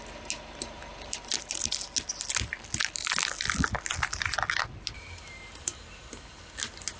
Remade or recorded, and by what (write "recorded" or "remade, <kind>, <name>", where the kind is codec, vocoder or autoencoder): recorded